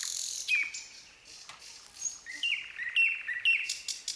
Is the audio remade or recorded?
recorded